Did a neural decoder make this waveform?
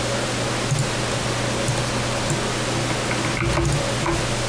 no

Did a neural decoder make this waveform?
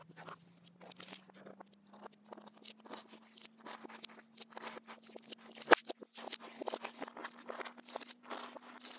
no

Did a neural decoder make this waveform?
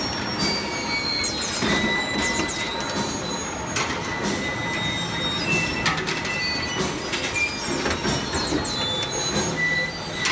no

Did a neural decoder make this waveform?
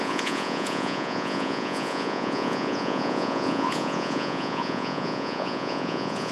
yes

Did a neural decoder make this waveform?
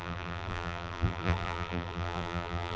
yes